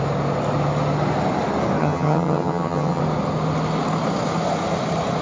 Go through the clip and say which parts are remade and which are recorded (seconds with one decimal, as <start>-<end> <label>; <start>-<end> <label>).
0.0-1.8 recorded; 1.8-3.0 remade; 3.0-5.2 recorded